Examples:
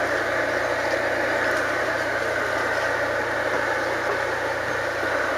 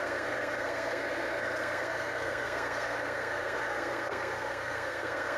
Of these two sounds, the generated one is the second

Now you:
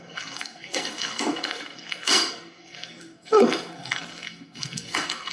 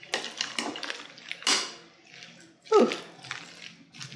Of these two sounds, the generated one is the first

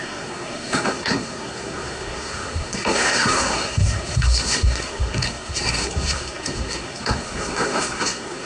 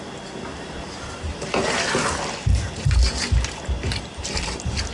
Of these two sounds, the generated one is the first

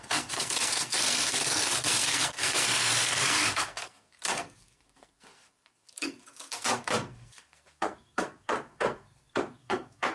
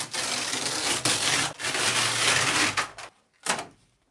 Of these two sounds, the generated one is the first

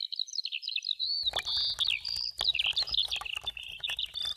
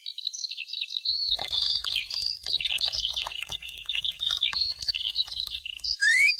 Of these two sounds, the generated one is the second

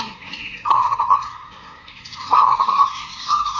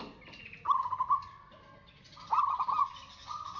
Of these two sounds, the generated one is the first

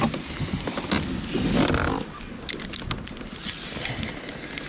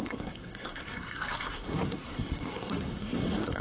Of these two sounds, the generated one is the second